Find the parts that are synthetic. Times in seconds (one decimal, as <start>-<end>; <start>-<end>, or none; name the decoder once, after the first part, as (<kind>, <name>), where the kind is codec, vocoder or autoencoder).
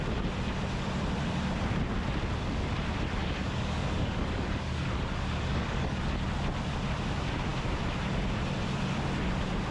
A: 3.2-6.0 (codec, DAC)